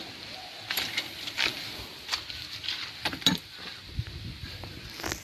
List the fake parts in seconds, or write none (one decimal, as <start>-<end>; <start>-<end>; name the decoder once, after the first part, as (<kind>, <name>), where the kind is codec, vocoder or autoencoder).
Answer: none